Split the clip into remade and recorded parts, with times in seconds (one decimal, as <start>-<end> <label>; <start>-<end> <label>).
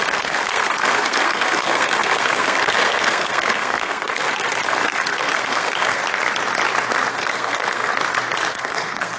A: 0.0-6.0 remade; 6.0-7.1 recorded; 7.1-7.9 remade; 7.9-8.5 recorded; 8.5-9.2 remade